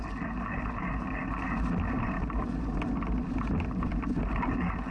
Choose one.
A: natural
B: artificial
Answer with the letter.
A